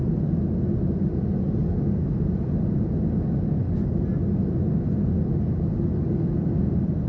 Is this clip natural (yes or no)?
yes